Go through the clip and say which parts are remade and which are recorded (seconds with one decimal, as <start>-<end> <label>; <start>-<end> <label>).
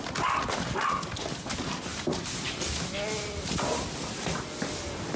0.0-5.2 recorded